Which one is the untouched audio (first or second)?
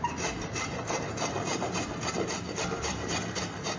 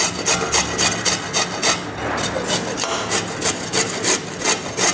second